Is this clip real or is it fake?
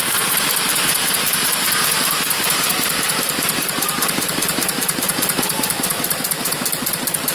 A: fake